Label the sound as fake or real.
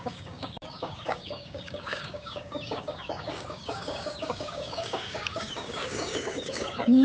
fake